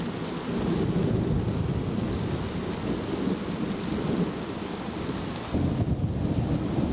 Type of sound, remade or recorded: recorded